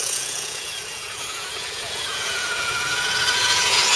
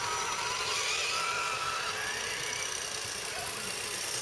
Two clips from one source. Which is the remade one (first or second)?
first